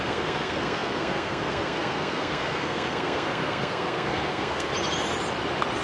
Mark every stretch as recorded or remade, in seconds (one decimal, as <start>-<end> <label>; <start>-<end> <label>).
0.0-4.7 remade; 4.7-5.8 recorded